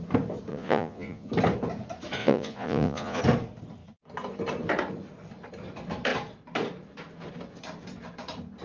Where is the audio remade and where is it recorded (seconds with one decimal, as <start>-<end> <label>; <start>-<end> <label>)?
0.0-0.5 recorded; 0.5-1.3 remade; 1.3-2.2 recorded; 2.2-3.2 remade; 3.2-8.6 recorded